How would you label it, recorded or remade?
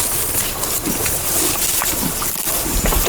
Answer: recorded